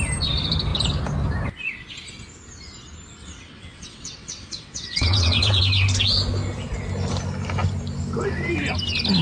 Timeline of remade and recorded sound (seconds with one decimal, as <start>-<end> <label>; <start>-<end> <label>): 0.0-3.2 recorded; 3.2-5.6 remade; 5.6-9.2 recorded